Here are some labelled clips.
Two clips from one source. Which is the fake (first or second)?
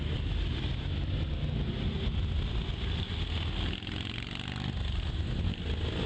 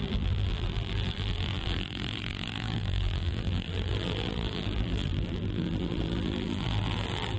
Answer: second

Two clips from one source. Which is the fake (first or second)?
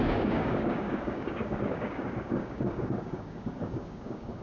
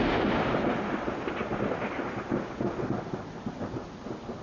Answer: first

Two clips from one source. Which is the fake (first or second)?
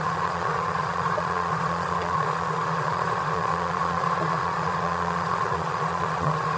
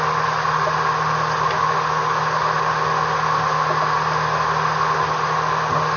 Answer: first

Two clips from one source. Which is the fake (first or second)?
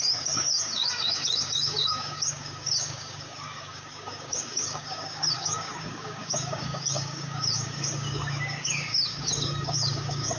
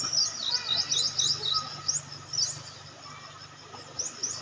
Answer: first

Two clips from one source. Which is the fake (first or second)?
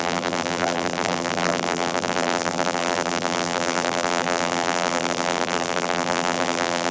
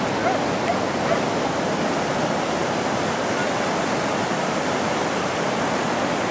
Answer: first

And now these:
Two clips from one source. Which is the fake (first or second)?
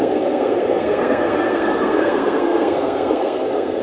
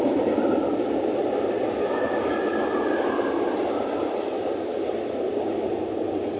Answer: first